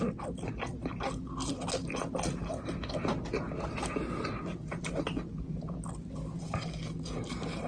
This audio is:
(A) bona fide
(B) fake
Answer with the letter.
A